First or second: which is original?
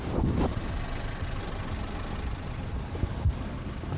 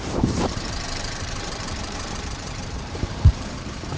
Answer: first